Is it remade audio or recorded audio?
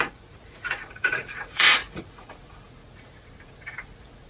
remade